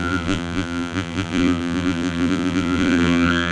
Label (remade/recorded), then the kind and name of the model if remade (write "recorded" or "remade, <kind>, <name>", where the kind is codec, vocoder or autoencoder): remade, vocoder, BigVGAN v2